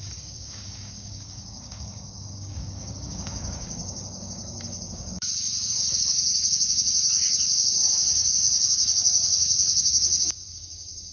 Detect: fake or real fake